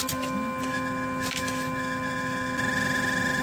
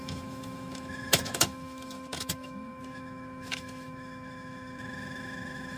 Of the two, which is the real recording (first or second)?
first